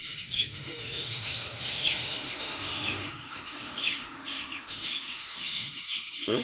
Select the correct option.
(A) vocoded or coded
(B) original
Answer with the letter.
A